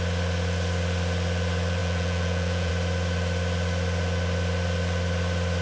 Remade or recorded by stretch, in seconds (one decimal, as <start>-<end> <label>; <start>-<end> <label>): 0.0-1.8 recorded; 1.8-2.7 remade; 2.7-5.6 recorded